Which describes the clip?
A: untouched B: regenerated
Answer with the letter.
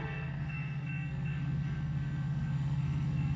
B